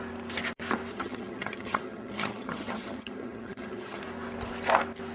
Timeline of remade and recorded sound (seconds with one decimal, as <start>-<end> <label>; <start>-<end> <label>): 0.0-0.9 recorded; 0.9-4.0 remade; 4.0-5.1 recorded